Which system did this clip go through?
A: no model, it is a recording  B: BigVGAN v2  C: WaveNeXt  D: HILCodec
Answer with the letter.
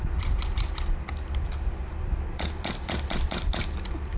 A